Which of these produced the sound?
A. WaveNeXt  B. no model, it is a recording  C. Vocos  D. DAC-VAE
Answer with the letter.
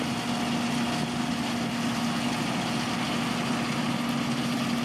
B